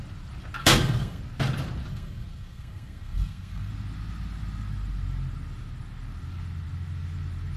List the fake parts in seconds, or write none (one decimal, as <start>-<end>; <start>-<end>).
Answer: 0.6-1.2; 1.9-3.7